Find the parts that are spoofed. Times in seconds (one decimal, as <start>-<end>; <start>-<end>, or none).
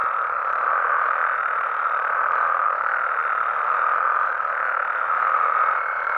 none